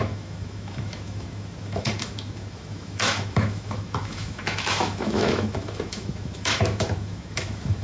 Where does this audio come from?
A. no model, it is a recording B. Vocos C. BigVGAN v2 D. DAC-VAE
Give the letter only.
D